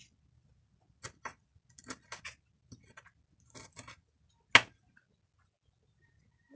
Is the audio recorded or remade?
recorded